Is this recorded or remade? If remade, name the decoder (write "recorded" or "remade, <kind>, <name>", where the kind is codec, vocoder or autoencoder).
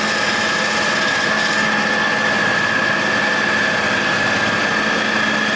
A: recorded